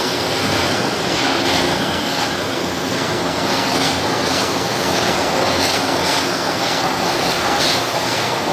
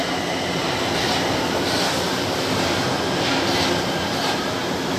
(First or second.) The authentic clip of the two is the second